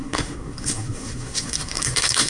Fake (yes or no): yes